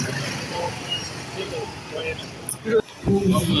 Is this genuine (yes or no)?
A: yes